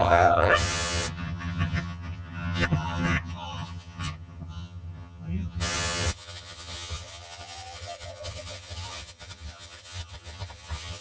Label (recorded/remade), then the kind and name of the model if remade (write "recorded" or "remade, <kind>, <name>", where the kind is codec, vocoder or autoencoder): remade, vocoder, HiFi-GAN